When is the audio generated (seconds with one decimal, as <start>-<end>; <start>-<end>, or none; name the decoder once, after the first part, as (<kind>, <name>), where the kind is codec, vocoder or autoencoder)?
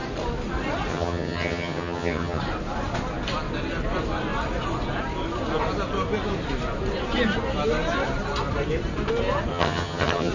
0.9-2.4 (vocoder, HiFi-GAN); 9.5-10.3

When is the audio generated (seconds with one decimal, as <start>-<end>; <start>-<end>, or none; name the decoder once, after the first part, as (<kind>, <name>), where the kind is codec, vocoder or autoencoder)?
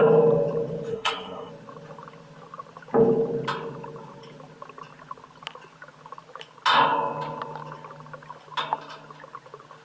0.9-1.5 (codec, SNAC)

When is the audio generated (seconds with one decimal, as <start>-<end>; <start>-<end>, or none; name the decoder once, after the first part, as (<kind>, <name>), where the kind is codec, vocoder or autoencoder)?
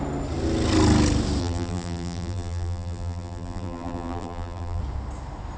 1.4-4.8 (vocoder, BigVGAN v2)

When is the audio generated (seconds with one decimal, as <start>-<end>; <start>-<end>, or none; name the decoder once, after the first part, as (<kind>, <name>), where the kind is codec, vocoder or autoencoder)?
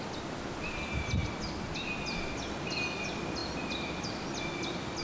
none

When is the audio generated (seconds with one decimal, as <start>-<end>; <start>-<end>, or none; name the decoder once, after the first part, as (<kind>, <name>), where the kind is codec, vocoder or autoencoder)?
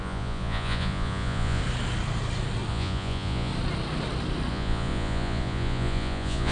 0.0-1.6 (vocoder, Vocos); 2.7-3.5; 4.5-6.5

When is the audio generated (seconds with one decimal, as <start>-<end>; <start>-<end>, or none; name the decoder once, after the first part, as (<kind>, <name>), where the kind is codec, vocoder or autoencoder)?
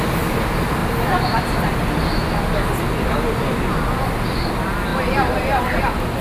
4.9-6.2 (vocoder, BigVGAN v2)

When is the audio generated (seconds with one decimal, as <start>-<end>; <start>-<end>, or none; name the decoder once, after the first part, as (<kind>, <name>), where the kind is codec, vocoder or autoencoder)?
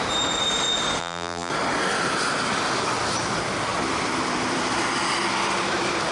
1.0-1.5 (vocoder, BigVGAN v2)